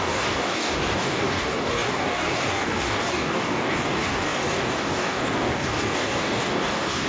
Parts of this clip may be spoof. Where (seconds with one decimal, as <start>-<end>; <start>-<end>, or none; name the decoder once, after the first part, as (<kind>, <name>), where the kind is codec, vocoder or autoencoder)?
0.0-7.1 (codec, DAC)